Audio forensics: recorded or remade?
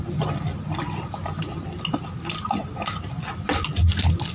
recorded